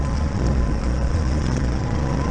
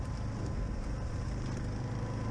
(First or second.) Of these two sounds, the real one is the second